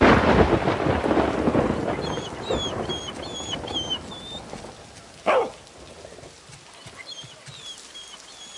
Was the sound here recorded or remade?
recorded